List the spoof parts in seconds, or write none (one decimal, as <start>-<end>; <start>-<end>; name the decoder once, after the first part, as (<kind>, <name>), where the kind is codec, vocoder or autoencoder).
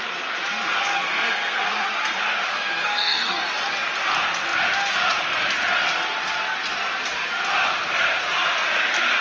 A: 0.9-2.2 (codec, SNAC); 2.8-3.4